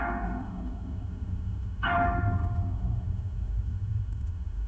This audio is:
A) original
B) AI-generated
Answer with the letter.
B